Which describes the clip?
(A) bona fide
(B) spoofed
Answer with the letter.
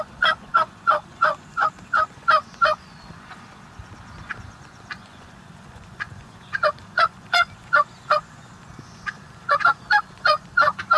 B